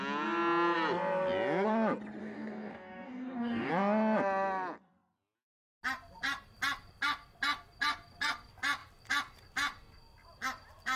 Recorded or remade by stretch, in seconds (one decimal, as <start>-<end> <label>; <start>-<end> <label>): 0.0-2.2 recorded; 2.2-3.7 remade; 3.7-11.0 recorded